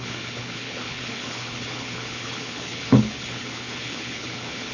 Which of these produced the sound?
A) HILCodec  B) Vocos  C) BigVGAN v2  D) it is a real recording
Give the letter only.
A